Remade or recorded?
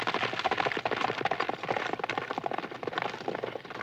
recorded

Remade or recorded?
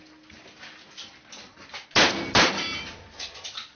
recorded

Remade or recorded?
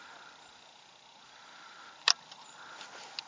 recorded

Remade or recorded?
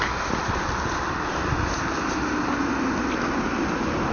recorded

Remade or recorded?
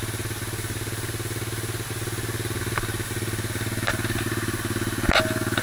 recorded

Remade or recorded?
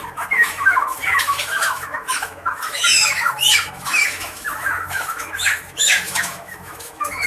remade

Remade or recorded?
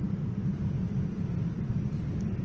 recorded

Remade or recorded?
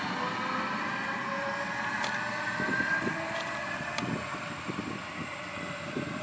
recorded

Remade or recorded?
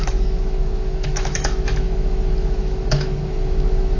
remade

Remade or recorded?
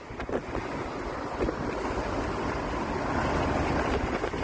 recorded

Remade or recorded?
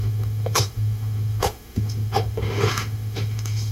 remade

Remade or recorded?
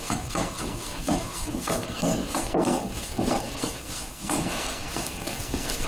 remade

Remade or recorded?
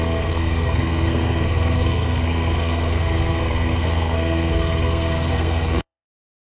remade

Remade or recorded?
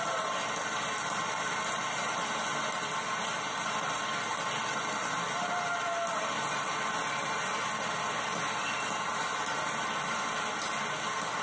recorded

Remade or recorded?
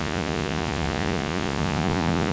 remade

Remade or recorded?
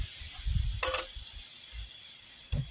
recorded